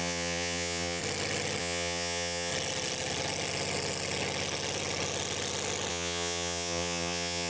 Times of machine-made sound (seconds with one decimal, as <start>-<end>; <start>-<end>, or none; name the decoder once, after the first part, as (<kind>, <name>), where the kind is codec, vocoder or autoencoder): 0.0-1.0 (vocoder, Vocos); 1.6-2.5; 5.9-7.5